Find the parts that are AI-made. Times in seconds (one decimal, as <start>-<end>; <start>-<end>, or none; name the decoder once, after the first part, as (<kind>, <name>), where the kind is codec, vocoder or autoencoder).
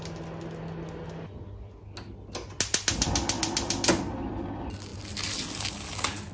none